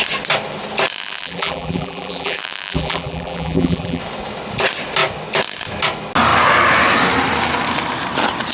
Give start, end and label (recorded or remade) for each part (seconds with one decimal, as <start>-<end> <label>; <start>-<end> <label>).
0.0-1.0 recorded; 1.0-4.0 remade; 4.0-8.5 recorded